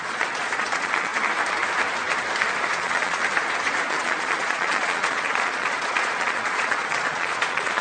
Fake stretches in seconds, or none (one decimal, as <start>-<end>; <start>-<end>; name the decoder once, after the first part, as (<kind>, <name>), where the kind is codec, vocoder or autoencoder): 0.0-1.1 (vocoder, Vocos); 2.7-3.2; 3.9-7.8